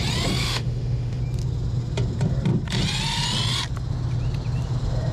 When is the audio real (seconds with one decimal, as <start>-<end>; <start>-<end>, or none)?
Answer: 0.0-0.4; 1.2-5.1